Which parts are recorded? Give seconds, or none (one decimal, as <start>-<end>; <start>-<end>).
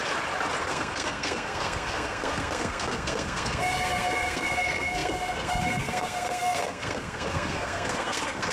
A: 0.0-0.6